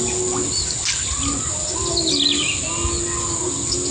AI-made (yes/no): no